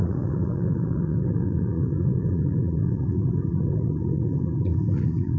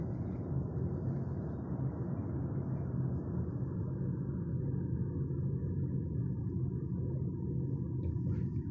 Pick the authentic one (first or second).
second